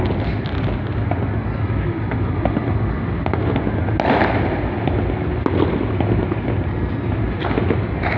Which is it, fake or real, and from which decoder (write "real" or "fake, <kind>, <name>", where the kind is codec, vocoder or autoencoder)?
real